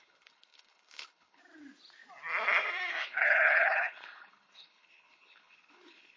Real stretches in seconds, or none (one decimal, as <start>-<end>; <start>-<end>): 1.4-2.9